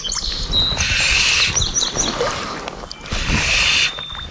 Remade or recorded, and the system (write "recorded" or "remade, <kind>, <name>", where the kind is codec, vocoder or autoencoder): recorded